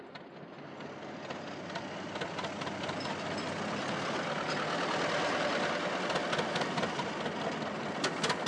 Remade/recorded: recorded